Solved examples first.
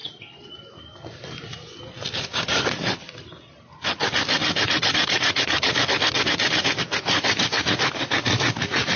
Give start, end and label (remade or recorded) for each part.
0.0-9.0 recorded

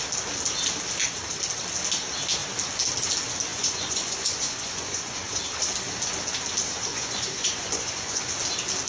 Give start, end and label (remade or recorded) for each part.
0.0-3.5 recorded; 3.5-5.4 remade; 5.4-6.9 recorded; 6.9-8.3 remade; 8.3-8.9 recorded

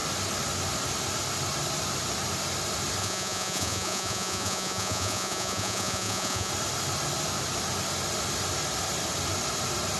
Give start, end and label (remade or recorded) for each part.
0.0-3.0 recorded; 3.0-6.5 remade; 6.5-10.0 recorded

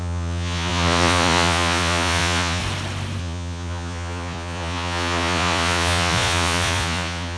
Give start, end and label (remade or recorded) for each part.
0.0-2.6 remade; 2.6-3.2 recorded; 3.2-7.4 remade

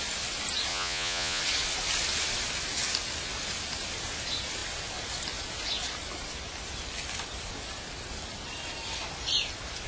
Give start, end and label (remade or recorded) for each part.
0.0-0.7 recorded; 0.7-1.4 remade; 1.4-9.9 recorded